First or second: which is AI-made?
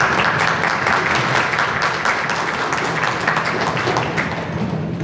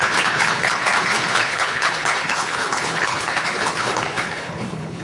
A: second